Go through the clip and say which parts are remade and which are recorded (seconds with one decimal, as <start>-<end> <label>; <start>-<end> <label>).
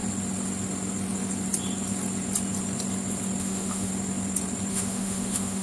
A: 0.0-3.4 recorded; 3.4-3.9 remade; 3.9-4.7 recorded; 4.7-5.6 remade